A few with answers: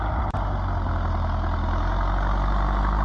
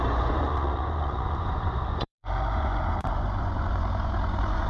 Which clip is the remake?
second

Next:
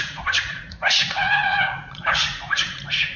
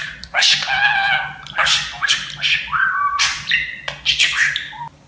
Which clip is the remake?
first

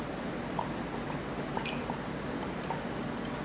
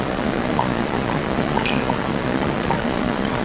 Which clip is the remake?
second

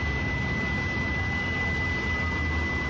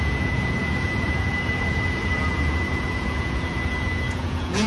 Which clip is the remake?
second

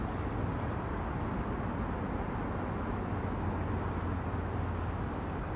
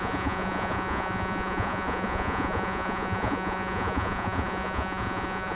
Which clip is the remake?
second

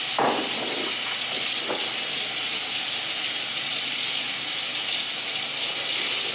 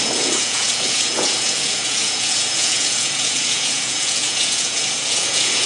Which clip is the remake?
second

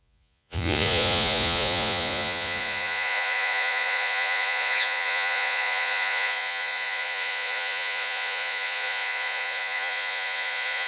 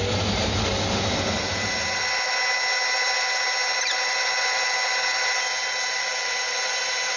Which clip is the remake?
first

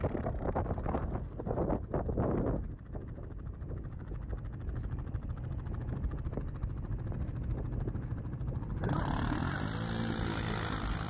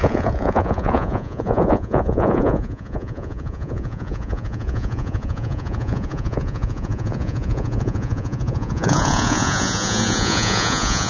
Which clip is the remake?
second